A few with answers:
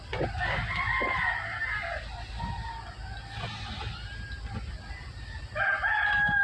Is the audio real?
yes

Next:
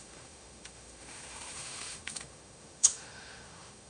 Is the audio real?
no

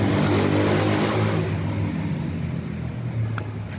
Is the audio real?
yes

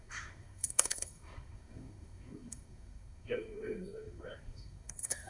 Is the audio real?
no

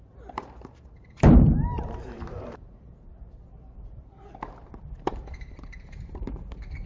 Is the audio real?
no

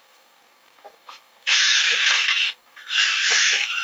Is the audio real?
no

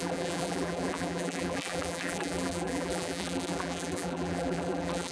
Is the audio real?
no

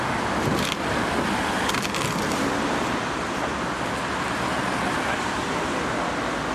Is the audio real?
yes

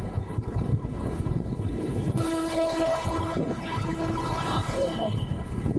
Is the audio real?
no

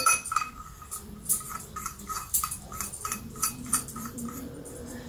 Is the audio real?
no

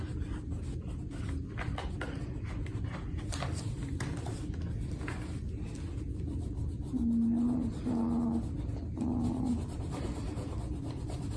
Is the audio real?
yes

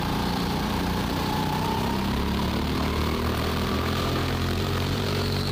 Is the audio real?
no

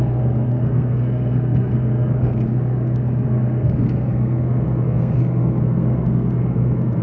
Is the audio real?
no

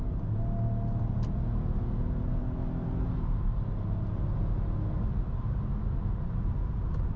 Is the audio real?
yes